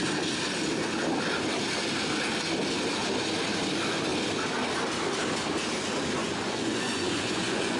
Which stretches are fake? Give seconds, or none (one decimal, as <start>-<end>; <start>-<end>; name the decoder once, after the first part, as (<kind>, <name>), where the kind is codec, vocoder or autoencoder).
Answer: 6.2-7.8 (vocoder, Vocos)